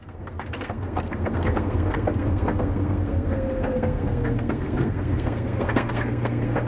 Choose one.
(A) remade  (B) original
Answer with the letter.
A